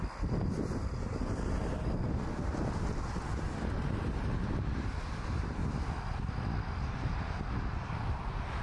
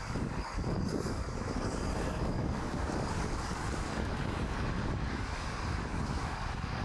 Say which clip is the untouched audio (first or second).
first